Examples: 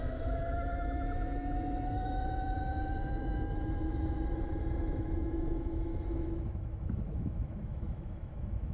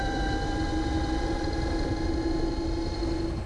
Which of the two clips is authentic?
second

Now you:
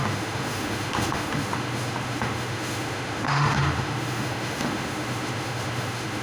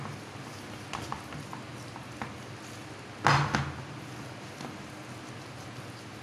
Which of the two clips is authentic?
second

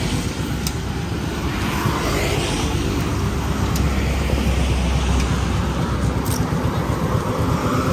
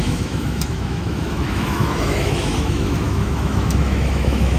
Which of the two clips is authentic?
first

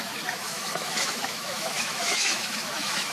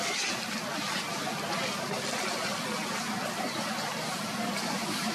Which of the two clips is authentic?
second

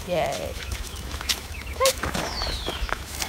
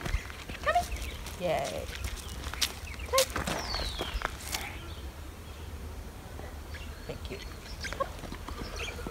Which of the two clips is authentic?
second